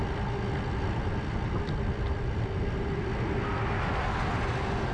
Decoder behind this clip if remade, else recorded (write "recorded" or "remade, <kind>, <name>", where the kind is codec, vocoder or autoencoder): recorded